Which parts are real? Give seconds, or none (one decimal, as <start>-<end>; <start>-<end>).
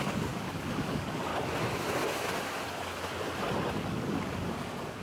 1.3-3.7